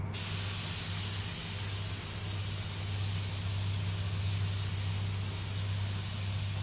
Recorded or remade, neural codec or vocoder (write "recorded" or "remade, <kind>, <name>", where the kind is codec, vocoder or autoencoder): recorded